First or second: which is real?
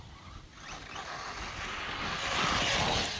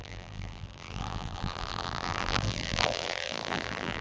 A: first